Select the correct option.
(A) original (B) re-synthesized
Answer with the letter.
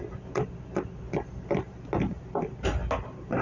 A